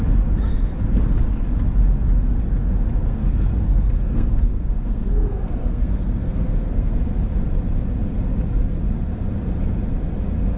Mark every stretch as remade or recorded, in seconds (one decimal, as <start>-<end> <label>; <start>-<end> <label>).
0.0-3.0 recorded; 3.0-7.0 remade; 7.0-10.6 recorded